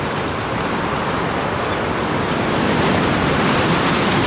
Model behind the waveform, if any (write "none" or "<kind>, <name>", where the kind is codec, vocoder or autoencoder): none